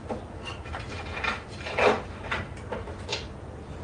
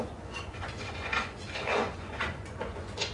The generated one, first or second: second